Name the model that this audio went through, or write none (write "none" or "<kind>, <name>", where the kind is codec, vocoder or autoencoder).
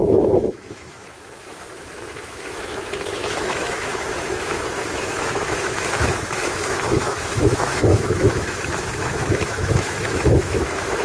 autoencoder, DAC-VAE